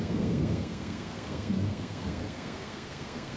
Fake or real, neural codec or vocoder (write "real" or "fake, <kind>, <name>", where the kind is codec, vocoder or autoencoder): fake, codec, SNAC